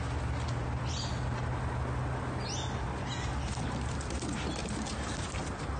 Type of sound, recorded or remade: recorded